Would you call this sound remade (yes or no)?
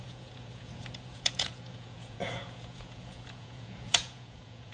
yes